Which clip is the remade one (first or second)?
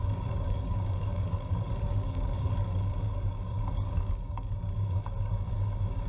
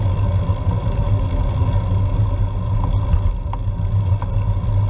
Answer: first